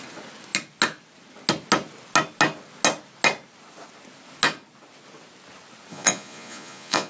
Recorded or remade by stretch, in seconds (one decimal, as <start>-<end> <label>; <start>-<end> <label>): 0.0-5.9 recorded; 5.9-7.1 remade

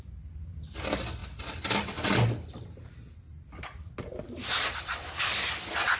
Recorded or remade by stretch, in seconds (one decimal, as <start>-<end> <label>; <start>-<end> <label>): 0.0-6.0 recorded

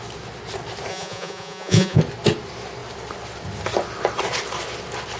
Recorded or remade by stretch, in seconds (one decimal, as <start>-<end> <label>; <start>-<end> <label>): 0.0-0.9 recorded; 0.9-2.0 remade; 2.0-5.2 recorded

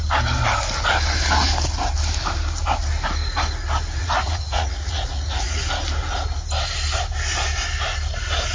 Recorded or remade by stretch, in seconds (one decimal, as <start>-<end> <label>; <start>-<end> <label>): 0.0-4.0 recorded; 4.0-5.6 remade; 5.6-8.5 recorded

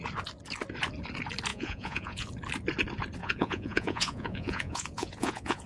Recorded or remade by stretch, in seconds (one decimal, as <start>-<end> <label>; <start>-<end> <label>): 0.0-1.5 recorded; 1.5-2.3 remade; 2.3-3.2 recorded; 3.2-5.7 remade

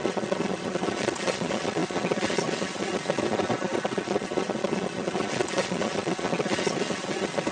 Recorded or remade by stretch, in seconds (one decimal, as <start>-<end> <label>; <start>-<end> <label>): 0.0-7.5 remade